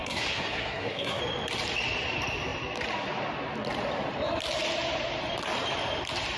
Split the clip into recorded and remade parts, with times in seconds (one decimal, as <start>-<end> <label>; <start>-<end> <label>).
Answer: 0.0-1.2 remade; 1.2-6.4 recorded